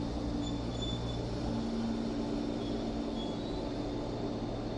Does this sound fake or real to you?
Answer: real